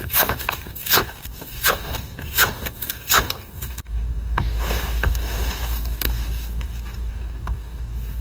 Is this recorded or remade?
remade